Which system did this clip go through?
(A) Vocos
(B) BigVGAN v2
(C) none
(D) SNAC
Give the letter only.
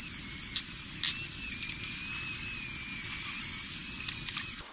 C